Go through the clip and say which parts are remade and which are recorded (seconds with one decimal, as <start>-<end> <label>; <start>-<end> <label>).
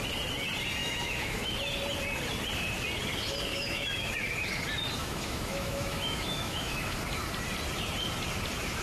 0.0-0.8 recorded; 0.8-1.5 remade; 1.5-3.5 recorded; 3.5-4.1 remade; 4.1-5.0 recorded; 5.0-7.0 remade; 7.0-8.8 recorded